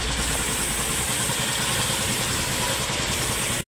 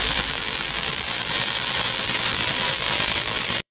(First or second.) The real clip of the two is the first